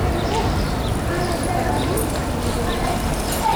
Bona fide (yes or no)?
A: yes